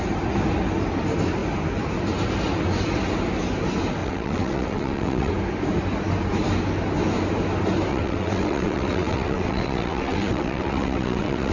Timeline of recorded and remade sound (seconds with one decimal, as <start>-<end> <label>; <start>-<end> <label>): 0.0-4.0 recorded; 4.0-5.3 remade; 5.3-7.9 recorded; 7.9-11.5 remade